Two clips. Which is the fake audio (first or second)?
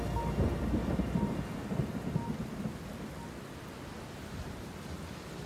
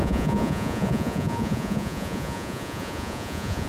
second